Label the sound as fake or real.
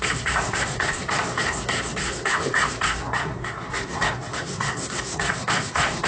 fake